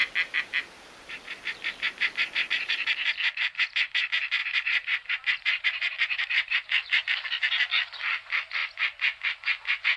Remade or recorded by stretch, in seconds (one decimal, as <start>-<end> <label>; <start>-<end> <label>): 0.0-2.5 remade; 2.5-4.4 recorded; 4.4-7.2 remade; 7.2-10.0 recorded